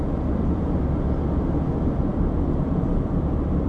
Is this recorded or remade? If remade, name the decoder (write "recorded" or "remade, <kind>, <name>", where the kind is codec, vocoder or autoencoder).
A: remade, vocoder, BigVGAN v2